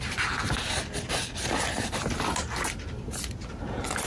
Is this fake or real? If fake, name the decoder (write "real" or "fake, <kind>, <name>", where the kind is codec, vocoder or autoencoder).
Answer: real